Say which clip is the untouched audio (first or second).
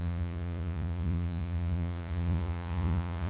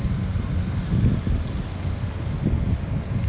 second